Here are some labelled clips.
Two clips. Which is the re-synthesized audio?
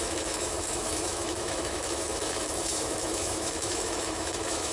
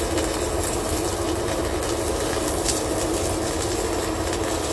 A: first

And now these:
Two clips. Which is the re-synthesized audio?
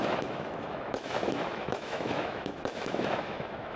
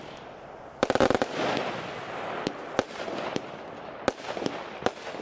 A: first